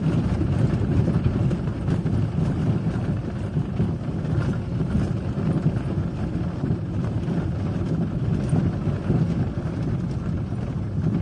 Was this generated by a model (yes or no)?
no